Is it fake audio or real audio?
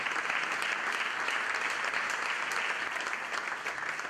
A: real